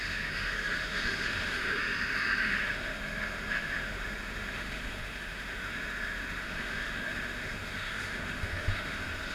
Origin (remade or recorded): remade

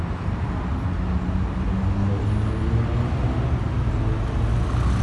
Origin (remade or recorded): recorded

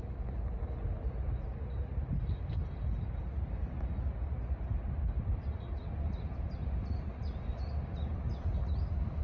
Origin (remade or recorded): recorded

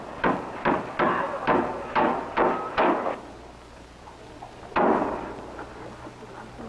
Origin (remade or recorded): recorded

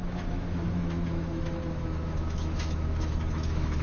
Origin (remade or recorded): remade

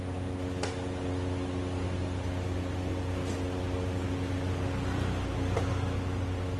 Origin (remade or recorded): recorded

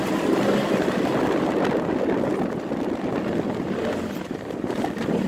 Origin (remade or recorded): recorded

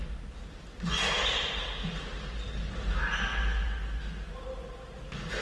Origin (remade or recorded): recorded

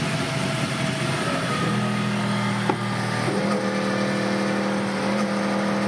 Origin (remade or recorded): recorded